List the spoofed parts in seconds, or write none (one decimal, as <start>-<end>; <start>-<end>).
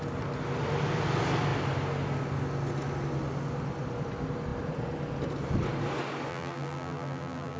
6.3-7.6